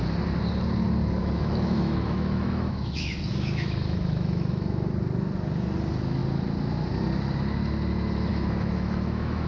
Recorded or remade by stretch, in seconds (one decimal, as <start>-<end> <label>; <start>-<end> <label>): 0.0-1.2 recorded; 1.2-4.9 remade; 4.9-8.3 recorded; 8.3-9.5 remade